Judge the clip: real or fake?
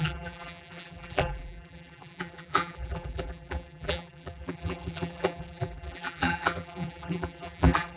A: fake